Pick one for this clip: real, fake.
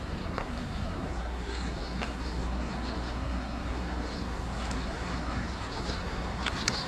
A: fake